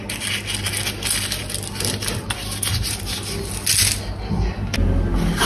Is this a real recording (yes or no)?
yes